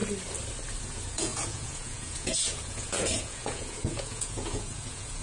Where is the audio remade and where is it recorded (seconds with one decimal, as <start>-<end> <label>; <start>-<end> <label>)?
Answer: 0.0-0.8 recorded; 0.8-5.2 remade